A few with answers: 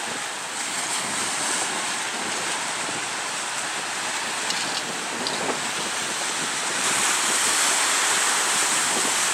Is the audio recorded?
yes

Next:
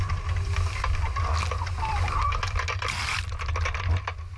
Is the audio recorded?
yes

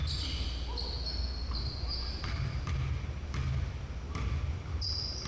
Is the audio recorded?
yes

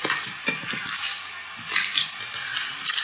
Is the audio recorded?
yes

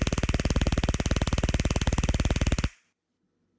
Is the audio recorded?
yes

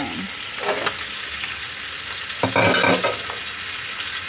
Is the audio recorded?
yes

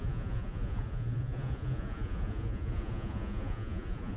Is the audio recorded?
no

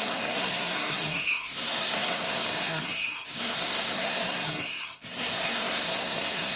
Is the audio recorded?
no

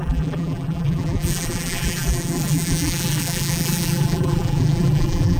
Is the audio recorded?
no